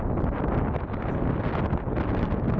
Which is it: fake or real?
real